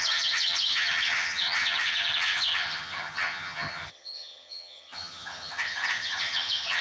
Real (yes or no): no